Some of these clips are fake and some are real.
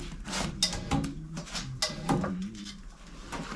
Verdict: real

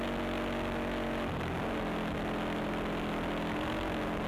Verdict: real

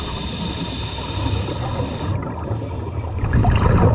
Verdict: real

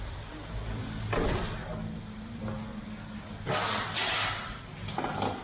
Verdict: real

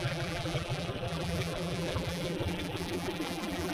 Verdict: fake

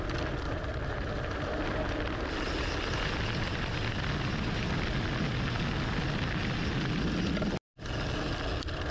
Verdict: real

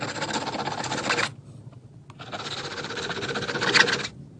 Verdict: real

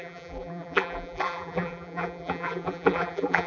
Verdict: fake